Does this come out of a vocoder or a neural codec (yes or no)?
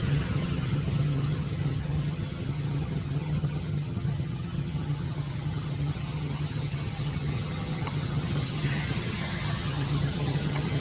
yes